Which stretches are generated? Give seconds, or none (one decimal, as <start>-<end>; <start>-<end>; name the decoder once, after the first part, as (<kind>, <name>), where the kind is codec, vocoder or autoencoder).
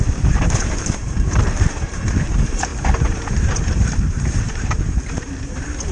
0.0-5.9 (vocoder, BigVGAN v2)